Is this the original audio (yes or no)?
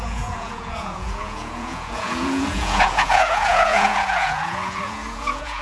no